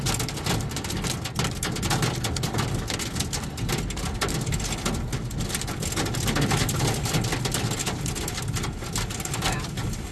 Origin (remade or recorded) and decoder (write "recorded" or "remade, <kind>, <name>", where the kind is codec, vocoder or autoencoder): recorded